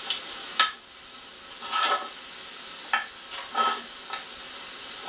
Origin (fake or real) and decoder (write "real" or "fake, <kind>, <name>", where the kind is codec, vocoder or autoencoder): real